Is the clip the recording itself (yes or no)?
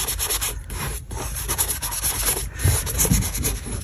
no